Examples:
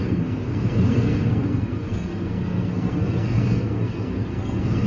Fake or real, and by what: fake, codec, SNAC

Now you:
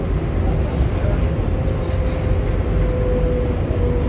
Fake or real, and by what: real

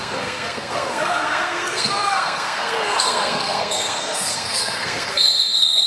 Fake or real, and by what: fake, codec, SNAC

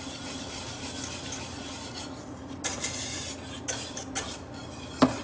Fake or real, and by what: real